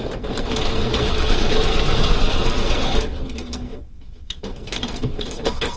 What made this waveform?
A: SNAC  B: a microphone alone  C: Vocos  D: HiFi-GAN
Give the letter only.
A